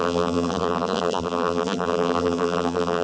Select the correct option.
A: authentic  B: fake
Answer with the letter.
B